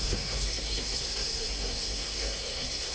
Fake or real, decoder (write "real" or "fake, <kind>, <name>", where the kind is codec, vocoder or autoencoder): fake, codec, SNAC